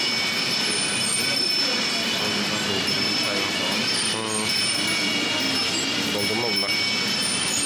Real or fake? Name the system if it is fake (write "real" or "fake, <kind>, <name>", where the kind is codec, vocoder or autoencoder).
real